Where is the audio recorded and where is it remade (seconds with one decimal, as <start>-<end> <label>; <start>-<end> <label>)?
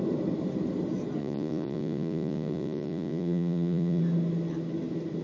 0.0-1.2 recorded; 1.2-4.0 remade; 4.0-5.2 recorded